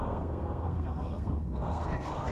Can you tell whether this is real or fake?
fake